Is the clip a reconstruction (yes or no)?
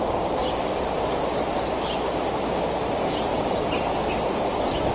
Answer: no